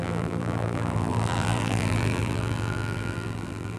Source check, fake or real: fake